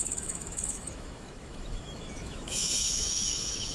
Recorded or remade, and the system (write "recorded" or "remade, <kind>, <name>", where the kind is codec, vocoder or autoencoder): remade, autoencoder, DAC-VAE